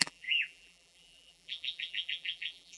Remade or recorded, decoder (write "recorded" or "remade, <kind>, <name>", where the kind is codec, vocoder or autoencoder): remade, vocoder, BigVGAN v2